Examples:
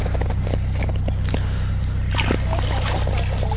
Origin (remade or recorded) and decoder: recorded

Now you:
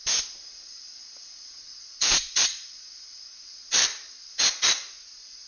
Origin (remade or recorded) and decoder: recorded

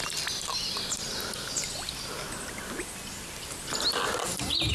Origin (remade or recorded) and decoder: recorded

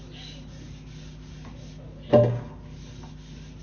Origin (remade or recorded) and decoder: recorded